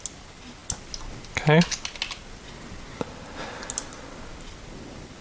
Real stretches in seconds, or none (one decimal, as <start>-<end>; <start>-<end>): 0.0-5.2